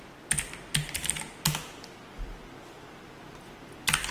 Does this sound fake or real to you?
real